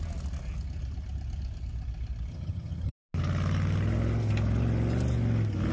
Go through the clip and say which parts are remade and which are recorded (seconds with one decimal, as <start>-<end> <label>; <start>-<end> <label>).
0.0-2.3 recorded; 2.3-2.9 remade; 2.9-5.7 recorded